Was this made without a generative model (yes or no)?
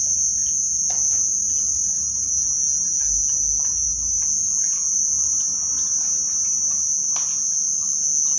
yes